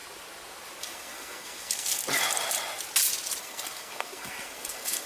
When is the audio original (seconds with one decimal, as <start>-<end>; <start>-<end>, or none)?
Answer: 0.0-0.8; 2.0-3.4

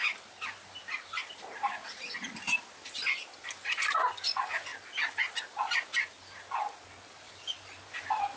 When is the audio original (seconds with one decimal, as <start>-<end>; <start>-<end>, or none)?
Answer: 0.0-8.4

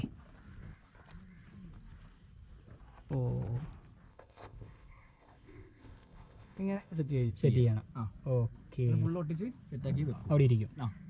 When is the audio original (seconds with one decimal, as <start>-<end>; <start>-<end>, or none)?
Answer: 0.0-4.1; 7.3-11.1

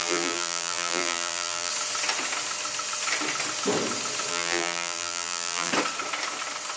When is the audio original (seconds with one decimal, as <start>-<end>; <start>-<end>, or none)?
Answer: 1.7-4.3; 5.7-6.8